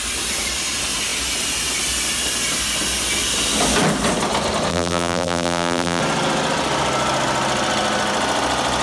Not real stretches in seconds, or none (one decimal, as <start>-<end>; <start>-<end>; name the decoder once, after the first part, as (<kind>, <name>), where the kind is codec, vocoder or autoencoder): 4.7-6.0 (vocoder, BigVGAN v2)

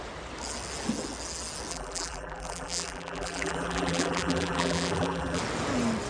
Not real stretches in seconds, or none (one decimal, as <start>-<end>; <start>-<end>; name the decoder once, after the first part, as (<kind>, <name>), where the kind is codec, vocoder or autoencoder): 1.7-5.4 (vocoder, BigVGAN v2)

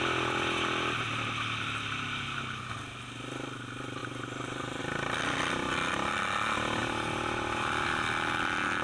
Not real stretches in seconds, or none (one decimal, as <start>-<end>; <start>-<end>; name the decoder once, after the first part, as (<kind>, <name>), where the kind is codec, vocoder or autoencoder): 4.0-4.8 (vocoder, BigVGAN v2)

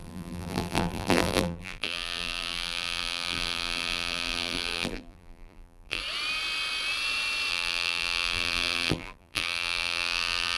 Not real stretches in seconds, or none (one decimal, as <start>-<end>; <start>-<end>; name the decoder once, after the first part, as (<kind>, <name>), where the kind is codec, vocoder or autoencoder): 0.0-6.0 (vocoder, BigVGAN v2); 7.5-10.6

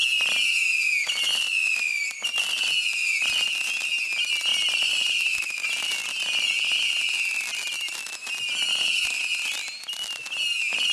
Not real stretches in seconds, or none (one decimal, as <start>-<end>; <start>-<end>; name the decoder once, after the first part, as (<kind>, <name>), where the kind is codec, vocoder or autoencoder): 4.5-6.0 (vocoder, BigVGAN v2)

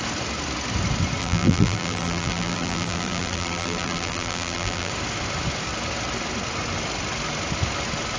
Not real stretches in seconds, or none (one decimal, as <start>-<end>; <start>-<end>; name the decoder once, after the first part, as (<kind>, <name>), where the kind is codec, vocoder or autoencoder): 1.2-4.9 (vocoder, BigVGAN v2)